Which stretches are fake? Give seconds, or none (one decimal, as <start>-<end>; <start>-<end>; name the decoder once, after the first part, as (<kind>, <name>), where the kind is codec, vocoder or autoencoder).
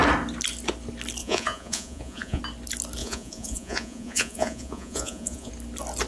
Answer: 1.2-2.4 (vocoder, Vocos); 3.0-5.5